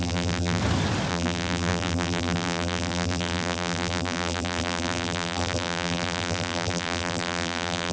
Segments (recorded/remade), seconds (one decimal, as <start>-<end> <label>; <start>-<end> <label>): 0.0-0.6 remade; 0.6-1.1 recorded; 1.1-7.9 remade